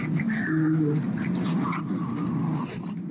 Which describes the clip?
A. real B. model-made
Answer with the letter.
A